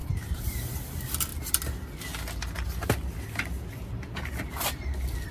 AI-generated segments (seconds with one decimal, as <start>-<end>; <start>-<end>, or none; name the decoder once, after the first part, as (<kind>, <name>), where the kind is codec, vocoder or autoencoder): 0.0-0.9 (vocoder, BigVGAN v2)